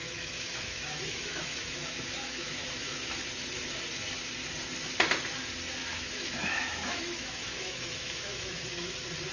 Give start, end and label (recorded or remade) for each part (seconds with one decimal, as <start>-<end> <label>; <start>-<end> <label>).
0.0-3.2 remade; 3.2-5.8 recorded; 5.8-8.9 remade; 8.9-9.3 recorded